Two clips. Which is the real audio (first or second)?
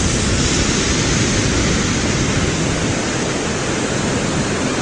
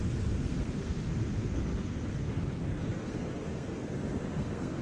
first